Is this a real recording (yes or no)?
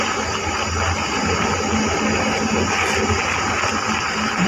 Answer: yes